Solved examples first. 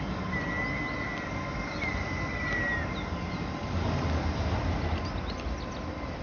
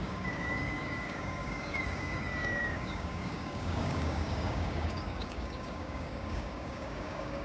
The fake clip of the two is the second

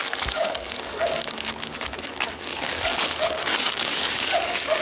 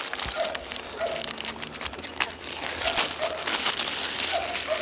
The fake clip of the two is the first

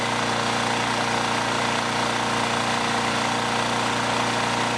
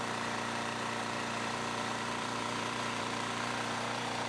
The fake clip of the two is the second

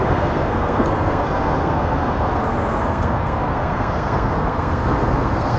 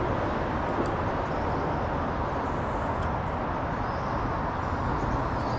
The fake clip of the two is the first